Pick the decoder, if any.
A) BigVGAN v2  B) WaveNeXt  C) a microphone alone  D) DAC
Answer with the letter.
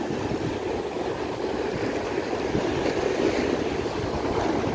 C